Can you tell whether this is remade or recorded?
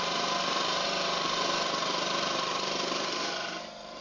remade